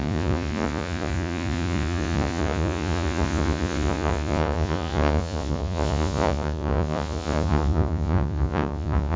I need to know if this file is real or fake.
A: fake